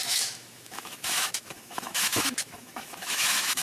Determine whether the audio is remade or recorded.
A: remade